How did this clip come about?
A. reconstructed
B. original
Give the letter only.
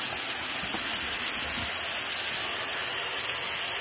B